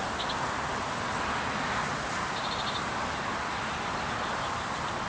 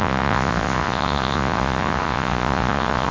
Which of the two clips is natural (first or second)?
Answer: first